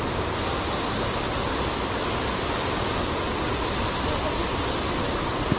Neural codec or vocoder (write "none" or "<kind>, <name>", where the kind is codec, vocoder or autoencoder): none